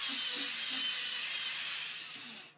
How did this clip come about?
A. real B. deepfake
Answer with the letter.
A